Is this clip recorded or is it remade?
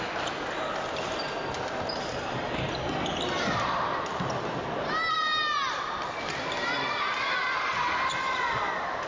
recorded